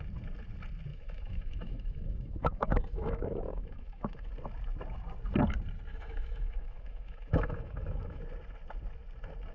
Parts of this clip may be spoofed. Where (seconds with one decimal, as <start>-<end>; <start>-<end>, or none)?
0.9-4.3; 5.9-8.2